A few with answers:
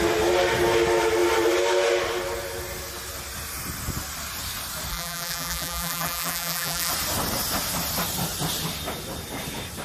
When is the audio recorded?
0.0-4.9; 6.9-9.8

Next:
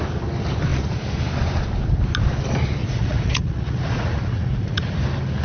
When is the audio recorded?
0.0-2.8; 5.0-5.4

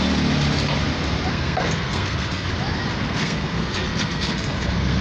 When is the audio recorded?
0.0-1.3; 2.5-3.0

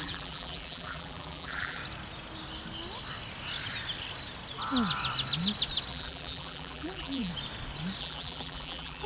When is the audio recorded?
1.8-5.9; 7.3-8.0

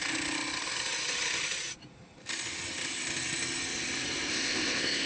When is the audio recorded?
0.0-4.3